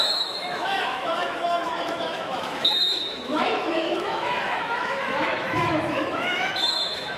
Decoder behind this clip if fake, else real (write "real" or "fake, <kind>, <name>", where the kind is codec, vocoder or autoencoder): fake, autoencoder, DAC-VAE